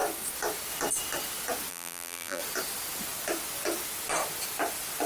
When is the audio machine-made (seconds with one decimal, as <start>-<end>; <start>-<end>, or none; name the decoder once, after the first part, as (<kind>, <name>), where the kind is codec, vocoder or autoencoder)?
1.7-2.4 (vocoder, BigVGAN v2)